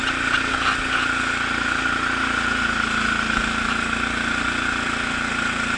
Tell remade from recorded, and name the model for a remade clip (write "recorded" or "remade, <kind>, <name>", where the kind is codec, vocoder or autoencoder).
recorded